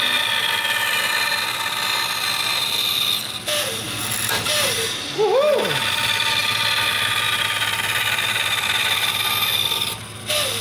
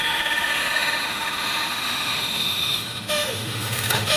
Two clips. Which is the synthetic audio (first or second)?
second